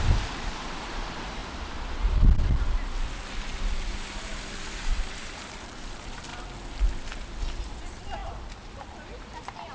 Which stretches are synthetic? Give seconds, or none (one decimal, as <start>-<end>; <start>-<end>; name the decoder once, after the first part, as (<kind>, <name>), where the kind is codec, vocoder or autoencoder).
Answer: 0.0-1.4 (vocoder, BigVGAN v2); 4.2-6.3; 7.6-9.7